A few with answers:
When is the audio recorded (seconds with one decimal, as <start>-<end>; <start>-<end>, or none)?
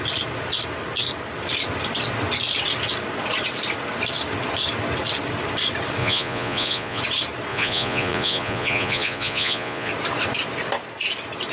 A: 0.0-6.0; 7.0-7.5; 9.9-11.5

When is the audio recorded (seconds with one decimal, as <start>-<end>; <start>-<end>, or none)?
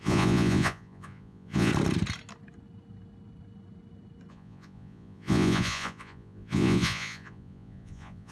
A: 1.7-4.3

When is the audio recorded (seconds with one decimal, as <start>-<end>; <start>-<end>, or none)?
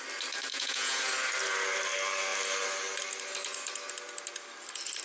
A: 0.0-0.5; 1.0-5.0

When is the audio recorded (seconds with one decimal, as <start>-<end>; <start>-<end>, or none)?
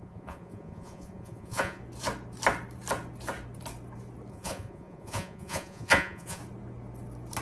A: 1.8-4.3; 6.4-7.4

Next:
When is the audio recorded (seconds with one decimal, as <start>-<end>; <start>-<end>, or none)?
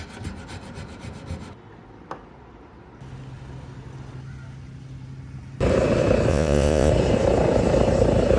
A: 0.0-6.3; 6.9-8.4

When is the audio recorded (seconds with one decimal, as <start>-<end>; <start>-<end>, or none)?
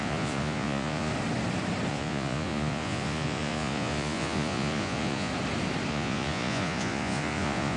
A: 1.1-1.9; 5.3-5.9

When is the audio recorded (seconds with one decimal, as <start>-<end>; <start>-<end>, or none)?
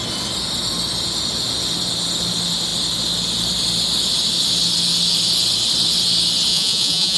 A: 0.0-6.5